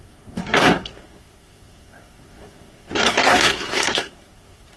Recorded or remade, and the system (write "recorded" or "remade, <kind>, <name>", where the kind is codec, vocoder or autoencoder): remade, codec, SNAC